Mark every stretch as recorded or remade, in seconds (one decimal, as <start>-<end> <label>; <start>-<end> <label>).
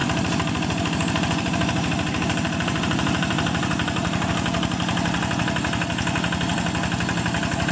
0.0-4.3 remade; 4.3-7.7 recorded